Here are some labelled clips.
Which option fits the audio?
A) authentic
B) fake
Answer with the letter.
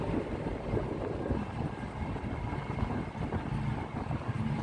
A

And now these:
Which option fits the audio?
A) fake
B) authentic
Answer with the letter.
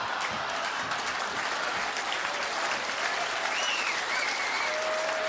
B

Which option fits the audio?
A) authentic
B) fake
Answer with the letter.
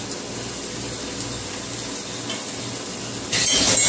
A